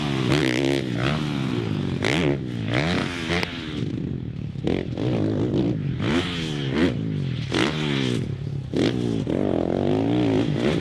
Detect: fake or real real